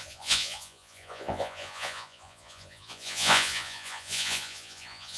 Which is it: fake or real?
fake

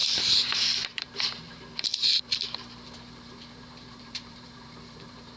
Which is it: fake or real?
fake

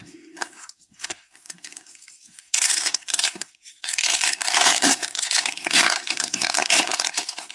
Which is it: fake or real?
fake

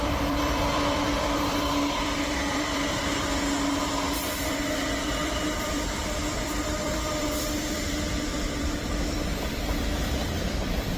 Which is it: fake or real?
fake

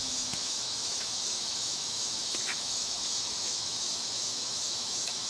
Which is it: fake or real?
fake